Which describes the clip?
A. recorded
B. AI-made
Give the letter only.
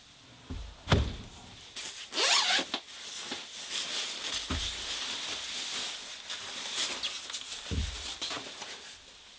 A